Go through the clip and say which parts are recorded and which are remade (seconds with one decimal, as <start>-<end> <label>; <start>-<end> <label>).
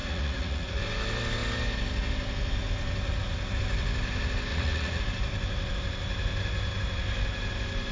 0.0-0.8 remade; 0.8-4.5 recorded; 4.5-5.0 remade; 5.0-7.9 recorded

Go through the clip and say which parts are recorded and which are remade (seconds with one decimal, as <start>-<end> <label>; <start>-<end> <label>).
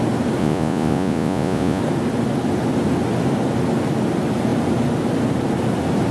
0.0-0.4 recorded; 0.4-1.8 remade; 1.8-6.1 recorded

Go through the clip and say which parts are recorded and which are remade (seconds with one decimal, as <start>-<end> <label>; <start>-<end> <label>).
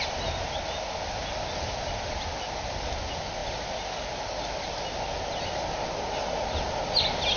0.0-7.4 recorded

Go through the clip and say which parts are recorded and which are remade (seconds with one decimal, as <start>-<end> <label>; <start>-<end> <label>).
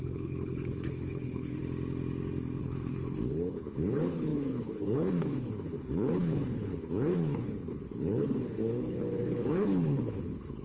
0.0-1.6 remade; 1.6-2.6 recorded; 2.6-10.6 remade